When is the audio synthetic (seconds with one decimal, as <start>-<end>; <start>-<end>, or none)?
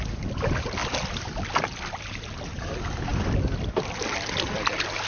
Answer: none